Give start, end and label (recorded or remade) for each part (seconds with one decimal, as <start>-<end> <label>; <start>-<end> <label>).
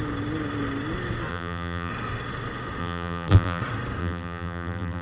0.0-1.3 recorded; 1.3-1.9 remade; 1.9-2.8 recorded; 2.8-3.6 remade; 3.6-4.0 recorded; 4.0-5.0 remade